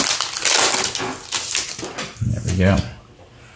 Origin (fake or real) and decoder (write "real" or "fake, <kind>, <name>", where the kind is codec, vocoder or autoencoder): real